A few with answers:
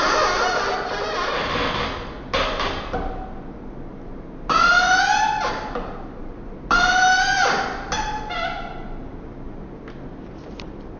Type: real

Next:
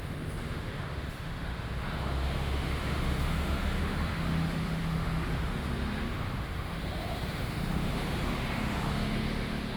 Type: fake